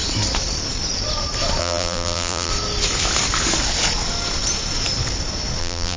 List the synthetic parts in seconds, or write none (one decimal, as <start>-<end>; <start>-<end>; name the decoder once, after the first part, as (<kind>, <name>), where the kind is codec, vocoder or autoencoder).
1.6-2.5 (vocoder, BigVGAN v2); 5.6-6.0

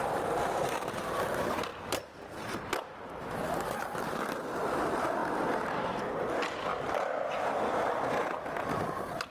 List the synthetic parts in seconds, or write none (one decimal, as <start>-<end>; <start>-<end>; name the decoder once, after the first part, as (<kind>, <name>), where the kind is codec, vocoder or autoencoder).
0.0-1.7 (vocoder, BigVGAN v2); 4.1-6.7